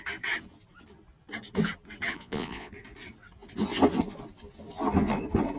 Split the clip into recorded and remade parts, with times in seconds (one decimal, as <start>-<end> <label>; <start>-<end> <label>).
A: 0.0-2.1 recorded; 2.1-2.7 remade; 2.7-5.6 recorded